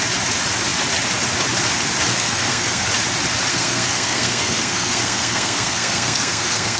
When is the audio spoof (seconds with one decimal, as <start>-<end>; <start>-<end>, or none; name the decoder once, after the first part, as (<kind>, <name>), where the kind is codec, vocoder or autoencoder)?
2.1-2.9 (codec, SNAC); 3.5-6.8